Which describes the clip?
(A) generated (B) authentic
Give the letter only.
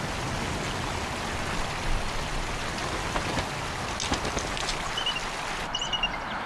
B